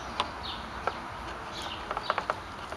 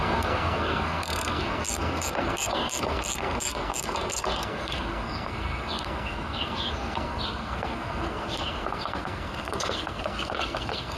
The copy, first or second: second